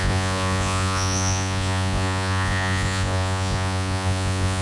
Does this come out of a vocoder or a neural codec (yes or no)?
yes